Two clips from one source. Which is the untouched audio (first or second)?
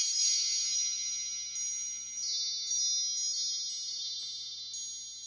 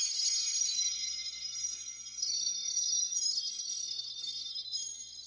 first